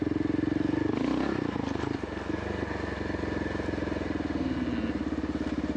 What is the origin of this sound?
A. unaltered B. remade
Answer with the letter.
A